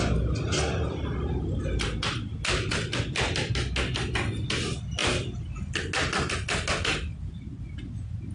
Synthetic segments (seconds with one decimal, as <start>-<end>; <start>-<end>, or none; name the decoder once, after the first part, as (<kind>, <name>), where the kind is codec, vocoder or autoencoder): none